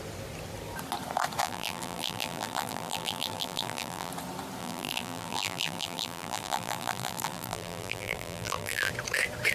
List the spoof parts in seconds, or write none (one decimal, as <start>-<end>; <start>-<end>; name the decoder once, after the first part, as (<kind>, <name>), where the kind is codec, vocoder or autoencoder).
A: 1.4-4.1 (vocoder, BigVGAN v2); 4.6-8.9